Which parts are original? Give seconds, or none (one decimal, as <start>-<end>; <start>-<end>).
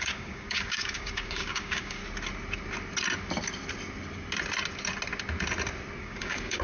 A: 2.0-6.0